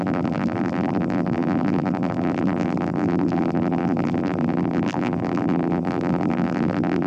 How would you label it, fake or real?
fake